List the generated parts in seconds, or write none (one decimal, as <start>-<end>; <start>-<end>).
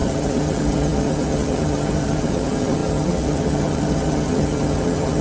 0.0-5.2